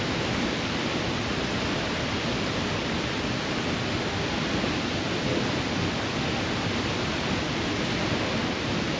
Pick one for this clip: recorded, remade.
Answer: remade